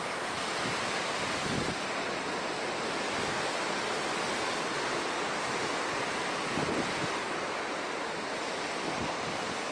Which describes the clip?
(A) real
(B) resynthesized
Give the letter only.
A